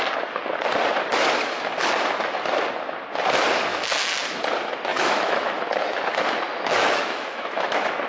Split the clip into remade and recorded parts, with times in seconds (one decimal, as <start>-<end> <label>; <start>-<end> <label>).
0.0-3.7 recorded; 3.7-4.4 remade; 4.4-4.9 recorded; 4.9-8.1 remade